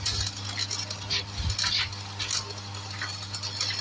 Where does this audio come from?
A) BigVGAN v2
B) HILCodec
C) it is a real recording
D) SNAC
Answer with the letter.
C